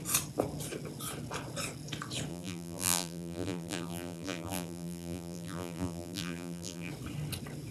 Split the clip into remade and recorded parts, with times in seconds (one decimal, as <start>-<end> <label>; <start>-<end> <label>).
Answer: 0.0-2.3 recorded; 2.3-6.9 remade; 6.9-7.7 recorded